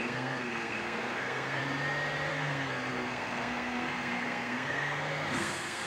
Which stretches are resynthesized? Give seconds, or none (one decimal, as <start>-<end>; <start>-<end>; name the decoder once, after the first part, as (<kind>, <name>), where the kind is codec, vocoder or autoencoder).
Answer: 0.0-1.6 (codec, SNAC); 2.3-5.9